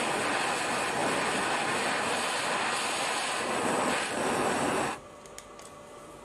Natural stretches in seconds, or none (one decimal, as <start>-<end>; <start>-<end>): 0.0-1.0; 4.7-6.2

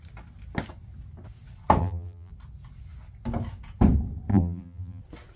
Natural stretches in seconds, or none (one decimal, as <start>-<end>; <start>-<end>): 0.0-1.8; 2.3-4.3; 5.0-5.4

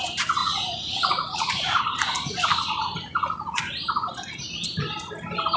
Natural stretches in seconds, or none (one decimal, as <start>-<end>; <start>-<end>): 0.0-0.4; 1.8-5.6

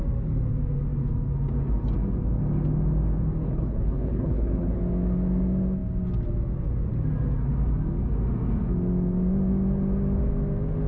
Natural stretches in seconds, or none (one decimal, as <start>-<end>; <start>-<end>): 0.0-3.4; 4.8-10.9

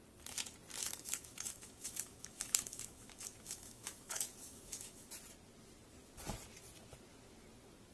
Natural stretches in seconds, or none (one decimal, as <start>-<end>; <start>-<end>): 0.0-0.8; 5.1-7.9

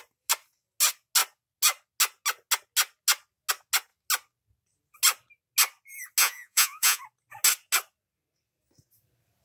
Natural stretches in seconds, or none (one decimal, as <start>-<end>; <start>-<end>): 0.0-6.2; 7.0-9.4

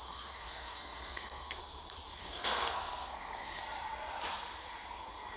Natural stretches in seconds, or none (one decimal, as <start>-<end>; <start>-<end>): 1.6-2.2; 3.6-5.4

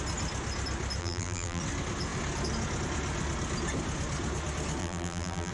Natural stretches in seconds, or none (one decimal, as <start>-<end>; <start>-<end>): 0.0-1.0; 1.6-4.8